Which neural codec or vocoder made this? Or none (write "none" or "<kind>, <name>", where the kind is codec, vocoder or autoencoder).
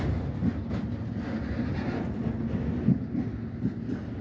none